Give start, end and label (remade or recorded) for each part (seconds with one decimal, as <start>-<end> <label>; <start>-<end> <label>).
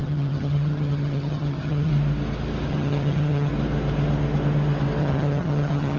0.0-1.9 remade; 1.9-2.7 recorded; 2.7-3.5 remade; 3.5-5.0 recorded; 5.0-6.0 remade